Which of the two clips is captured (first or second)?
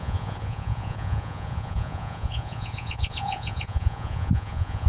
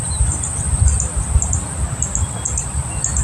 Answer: second